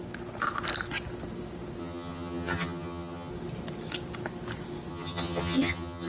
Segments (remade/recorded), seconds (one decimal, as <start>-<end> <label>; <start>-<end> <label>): 0.0-1.8 recorded; 1.8-3.3 remade; 3.3-4.9 recorded; 4.9-6.1 remade